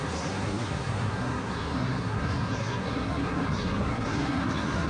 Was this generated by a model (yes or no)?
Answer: yes